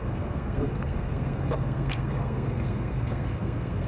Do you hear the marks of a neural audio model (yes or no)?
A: yes